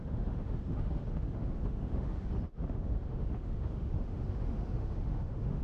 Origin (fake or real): fake